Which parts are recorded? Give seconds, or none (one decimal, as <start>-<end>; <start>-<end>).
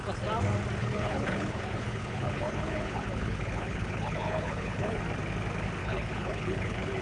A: 0.0-0.8; 5.0-5.8